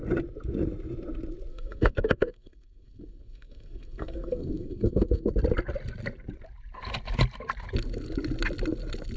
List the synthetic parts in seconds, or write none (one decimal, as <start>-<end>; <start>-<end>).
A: 1.5-5.3